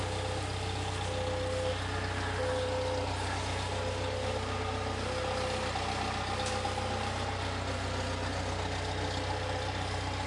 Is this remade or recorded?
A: recorded